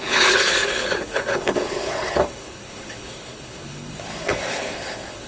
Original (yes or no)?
no